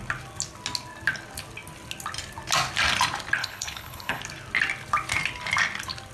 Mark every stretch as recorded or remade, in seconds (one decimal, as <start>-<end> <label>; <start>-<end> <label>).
0.0-3.4 recorded; 3.4-4.2 remade; 4.2-6.1 recorded